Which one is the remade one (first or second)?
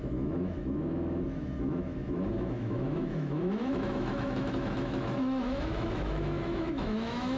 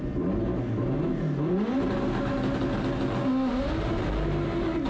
first